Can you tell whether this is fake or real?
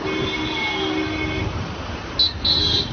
real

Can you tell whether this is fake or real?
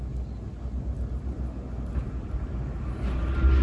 real